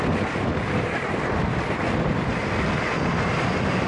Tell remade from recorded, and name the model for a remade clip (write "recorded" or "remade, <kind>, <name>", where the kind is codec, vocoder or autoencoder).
recorded